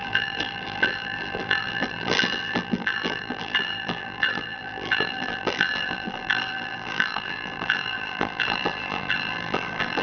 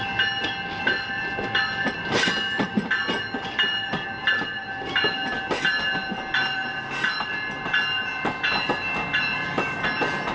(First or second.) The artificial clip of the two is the first